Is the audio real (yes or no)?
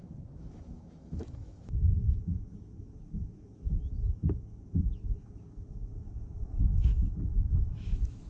no